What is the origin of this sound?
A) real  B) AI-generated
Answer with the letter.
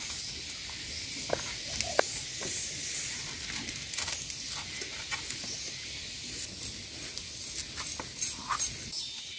A